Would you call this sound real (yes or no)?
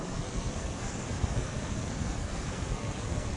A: no